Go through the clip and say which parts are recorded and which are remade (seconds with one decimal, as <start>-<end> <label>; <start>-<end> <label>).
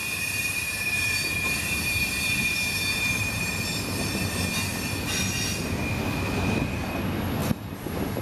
0.0-3.5 remade; 3.5-7.4 recorded; 7.4-8.2 remade